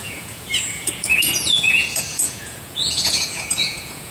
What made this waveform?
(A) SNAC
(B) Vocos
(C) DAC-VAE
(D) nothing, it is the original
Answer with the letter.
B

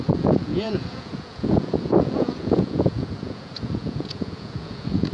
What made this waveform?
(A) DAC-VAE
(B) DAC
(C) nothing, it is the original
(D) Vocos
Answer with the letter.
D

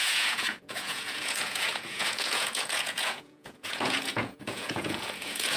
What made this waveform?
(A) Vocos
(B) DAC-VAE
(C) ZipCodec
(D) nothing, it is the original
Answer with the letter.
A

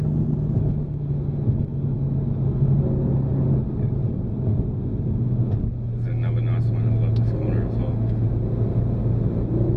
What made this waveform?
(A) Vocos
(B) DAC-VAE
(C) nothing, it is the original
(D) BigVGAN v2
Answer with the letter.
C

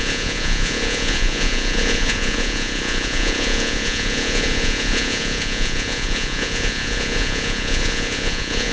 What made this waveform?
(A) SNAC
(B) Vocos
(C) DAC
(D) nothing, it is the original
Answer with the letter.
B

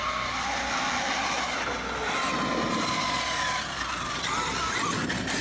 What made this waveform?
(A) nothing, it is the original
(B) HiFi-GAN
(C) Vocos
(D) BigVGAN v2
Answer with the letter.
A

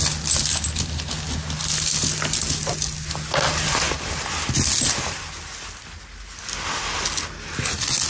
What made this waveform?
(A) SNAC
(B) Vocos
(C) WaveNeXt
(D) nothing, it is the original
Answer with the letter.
D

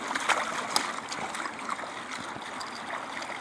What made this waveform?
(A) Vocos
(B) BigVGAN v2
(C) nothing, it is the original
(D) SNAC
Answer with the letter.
C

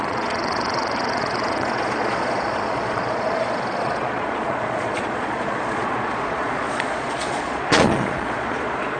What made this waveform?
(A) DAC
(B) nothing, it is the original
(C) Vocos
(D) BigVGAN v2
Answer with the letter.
C